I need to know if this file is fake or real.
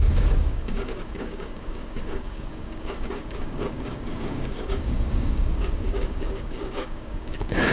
fake